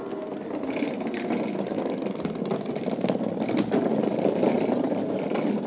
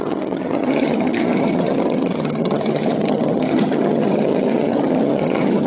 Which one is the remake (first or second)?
second